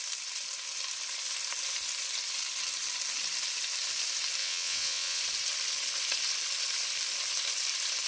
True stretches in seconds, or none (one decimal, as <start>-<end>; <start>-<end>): 0.0-4.4; 5.2-8.1